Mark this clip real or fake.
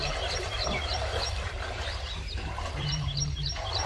fake